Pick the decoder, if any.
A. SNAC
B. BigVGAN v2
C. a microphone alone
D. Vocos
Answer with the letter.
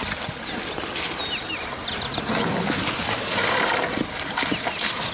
C